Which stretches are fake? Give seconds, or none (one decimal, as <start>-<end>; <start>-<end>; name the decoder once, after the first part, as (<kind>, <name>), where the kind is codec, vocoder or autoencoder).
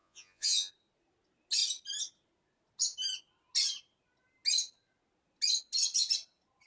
0.0-0.7 (vocoder, Vocos)